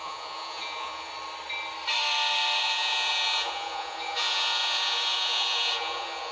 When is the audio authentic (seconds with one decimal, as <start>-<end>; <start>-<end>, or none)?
1.1-2.6